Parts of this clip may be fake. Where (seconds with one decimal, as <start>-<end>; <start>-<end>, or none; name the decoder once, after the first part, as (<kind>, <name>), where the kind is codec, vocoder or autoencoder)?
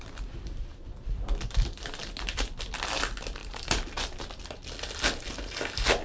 3.4-4.0 (vocoder, BigVGAN v2)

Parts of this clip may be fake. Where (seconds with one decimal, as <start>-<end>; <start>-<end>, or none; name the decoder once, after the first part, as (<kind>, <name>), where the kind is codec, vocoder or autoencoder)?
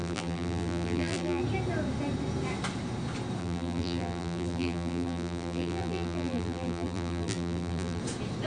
0.0-1.4 (vocoder, BigVGAN v2); 3.4-8.0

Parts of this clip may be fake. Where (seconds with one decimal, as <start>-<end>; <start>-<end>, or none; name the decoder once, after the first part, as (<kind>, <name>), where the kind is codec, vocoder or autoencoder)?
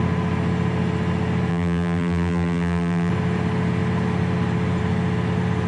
1.5-3.1 (vocoder, BigVGAN v2)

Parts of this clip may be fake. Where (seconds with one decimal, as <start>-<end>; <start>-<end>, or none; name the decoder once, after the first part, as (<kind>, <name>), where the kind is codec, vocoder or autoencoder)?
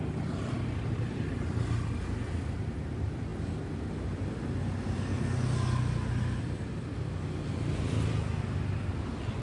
none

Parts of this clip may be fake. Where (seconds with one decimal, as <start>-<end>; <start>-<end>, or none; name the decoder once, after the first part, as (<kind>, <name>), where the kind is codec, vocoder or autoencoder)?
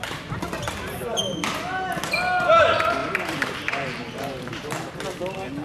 3.0-4.9 (vocoder, BigVGAN v2)